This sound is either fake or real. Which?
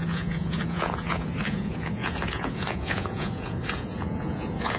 fake